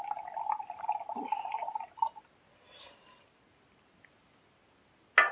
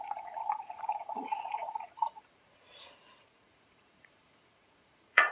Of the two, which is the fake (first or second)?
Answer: second